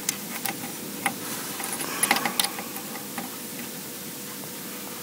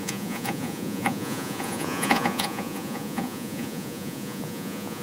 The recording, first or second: first